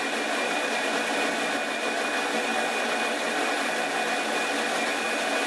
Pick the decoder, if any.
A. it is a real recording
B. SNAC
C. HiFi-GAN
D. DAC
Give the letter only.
A